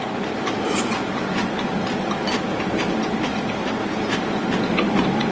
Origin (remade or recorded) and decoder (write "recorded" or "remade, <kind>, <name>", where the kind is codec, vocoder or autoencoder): recorded